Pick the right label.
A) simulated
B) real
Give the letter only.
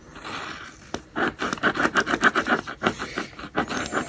B